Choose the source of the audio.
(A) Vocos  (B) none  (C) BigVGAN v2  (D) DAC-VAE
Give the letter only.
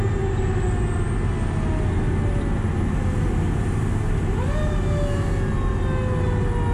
B